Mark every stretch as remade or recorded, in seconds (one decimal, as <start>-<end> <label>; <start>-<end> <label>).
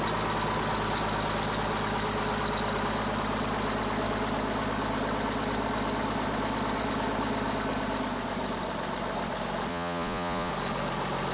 0.0-9.7 recorded; 9.7-10.5 remade; 10.5-11.3 recorded